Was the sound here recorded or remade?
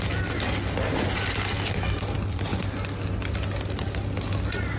recorded